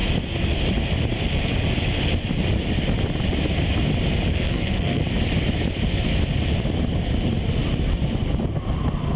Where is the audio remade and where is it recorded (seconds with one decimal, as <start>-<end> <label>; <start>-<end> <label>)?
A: 0.0-4.3 recorded; 4.3-5.0 remade; 5.0-9.2 recorded